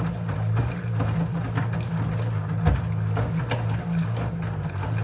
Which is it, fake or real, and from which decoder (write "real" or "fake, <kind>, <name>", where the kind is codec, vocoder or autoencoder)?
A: real